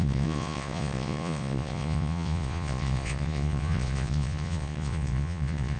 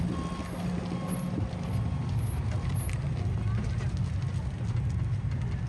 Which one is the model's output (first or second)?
first